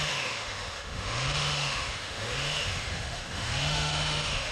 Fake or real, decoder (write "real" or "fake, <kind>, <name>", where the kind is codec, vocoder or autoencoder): fake, autoencoder, DAC-VAE